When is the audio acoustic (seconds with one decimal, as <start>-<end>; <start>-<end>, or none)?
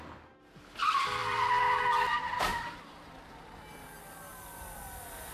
0.0-1.2; 1.8-2.5; 3.1-4.3; 4.8-5.3